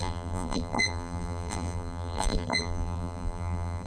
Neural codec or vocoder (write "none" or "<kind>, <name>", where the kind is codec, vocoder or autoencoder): vocoder, BigVGAN v2